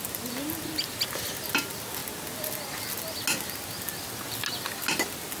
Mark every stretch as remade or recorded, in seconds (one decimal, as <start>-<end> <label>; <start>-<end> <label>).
0.0-5.4 recorded